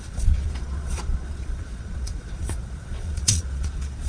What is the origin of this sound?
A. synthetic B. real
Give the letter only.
A